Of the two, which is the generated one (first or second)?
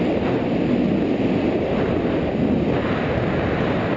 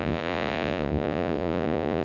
second